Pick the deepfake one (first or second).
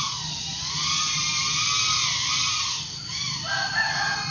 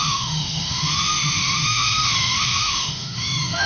second